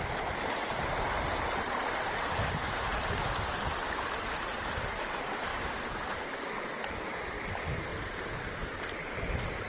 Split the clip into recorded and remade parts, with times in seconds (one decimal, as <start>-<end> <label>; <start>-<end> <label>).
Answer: 0.0-2.9 recorded; 2.9-4.4 remade; 4.4-5.5 recorded; 5.5-6.4 remade; 6.4-7.9 recorded; 7.9-8.4 remade; 8.4-9.7 recorded